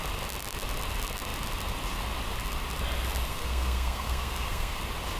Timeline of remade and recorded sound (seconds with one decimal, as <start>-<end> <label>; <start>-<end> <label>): 0.0-3.3 recorded; 3.3-4.8 remade; 4.8-5.2 recorded